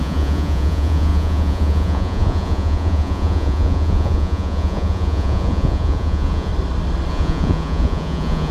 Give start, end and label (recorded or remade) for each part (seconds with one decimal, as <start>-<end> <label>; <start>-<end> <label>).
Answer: 0.0-6.5 remade; 6.5-7.1 recorded; 7.1-8.5 remade